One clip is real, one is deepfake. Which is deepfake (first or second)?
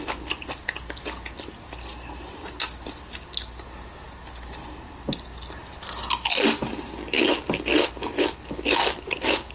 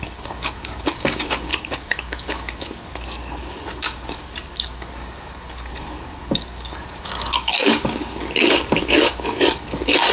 second